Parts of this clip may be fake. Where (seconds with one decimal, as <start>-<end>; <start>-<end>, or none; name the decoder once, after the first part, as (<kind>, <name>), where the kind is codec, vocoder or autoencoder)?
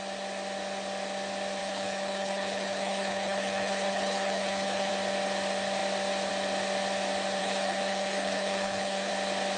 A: 1.6-4.9 (codec, HILCodec); 7.4-9.1